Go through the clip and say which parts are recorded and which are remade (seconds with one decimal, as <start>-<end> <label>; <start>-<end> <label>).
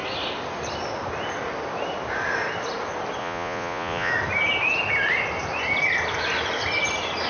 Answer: 0.0-3.2 recorded; 3.2-4.1 remade; 4.1-7.3 recorded